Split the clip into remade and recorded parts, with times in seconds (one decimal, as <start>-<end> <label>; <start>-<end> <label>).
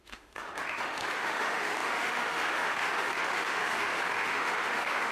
0.0-5.1 remade